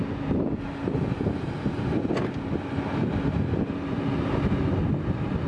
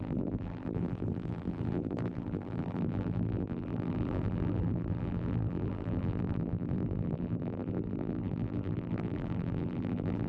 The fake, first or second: second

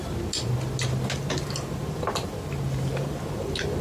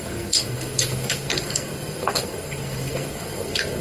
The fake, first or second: second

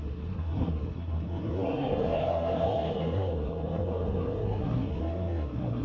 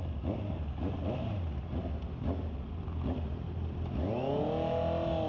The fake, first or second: first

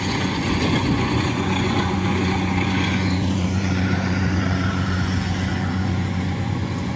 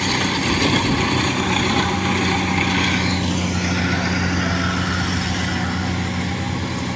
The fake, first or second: first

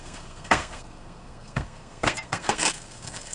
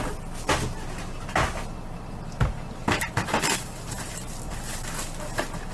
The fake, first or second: first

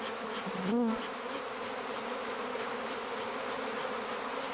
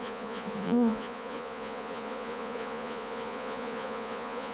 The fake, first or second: second